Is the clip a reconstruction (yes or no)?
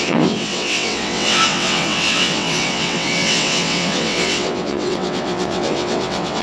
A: yes